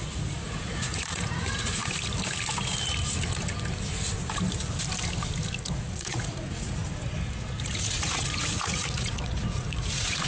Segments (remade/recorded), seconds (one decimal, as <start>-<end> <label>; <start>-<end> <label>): 0.0-1.8 remade; 1.8-5.8 recorded; 5.8-6.8 remade; 6.8-7.6 recorded; 7.6-10.3 remade